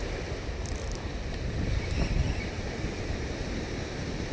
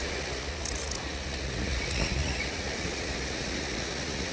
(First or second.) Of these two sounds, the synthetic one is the second